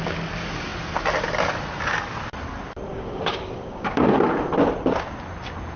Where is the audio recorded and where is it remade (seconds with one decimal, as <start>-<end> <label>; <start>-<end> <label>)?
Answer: 0.0-2.9 recorded; 2.9-4.1 remade; 4.1-5.8 recorded